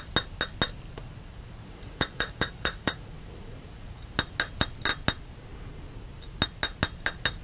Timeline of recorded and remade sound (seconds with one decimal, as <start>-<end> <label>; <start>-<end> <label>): 0.0-1.0 recorded; 1.0-4.1 remade; 4.1-7.4 recorded

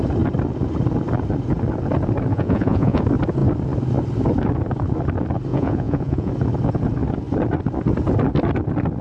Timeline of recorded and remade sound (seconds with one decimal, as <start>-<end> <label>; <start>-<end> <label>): 0.0-2.3 recorded; 2.3-3.0 remade; 3.0-5.5 recorded; 5.5-6.3 remade; 6.3-9.0 recorded